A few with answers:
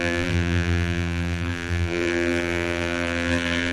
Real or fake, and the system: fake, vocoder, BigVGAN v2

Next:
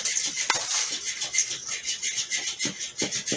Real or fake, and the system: real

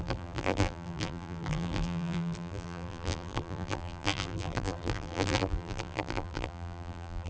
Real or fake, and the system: fake, vocoder, BigVGAN v2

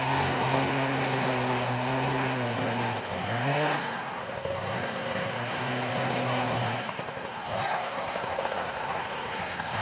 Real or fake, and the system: fake, codec, SNAC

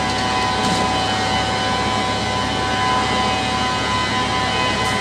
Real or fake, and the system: real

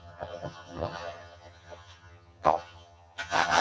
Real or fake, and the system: fake, vocoder, HiFi-GAN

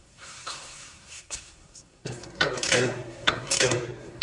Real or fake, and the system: fake, codec, SNAC